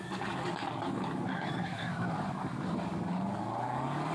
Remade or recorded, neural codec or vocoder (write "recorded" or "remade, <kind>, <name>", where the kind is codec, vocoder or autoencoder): remade, codec, DAC